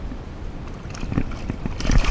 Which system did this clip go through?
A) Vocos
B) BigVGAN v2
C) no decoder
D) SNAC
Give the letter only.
C